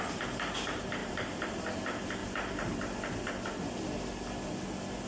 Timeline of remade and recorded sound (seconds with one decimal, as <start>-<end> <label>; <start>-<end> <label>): 0.0-1.0 recorded; 1.0-1.7 remade; 1.7-5.1 recorded